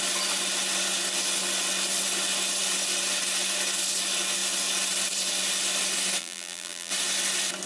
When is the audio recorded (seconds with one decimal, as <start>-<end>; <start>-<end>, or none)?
0.0-6.2; 6.9-7.7